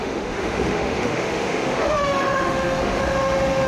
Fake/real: fake